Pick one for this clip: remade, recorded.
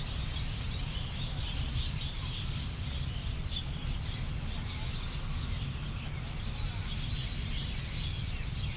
recorded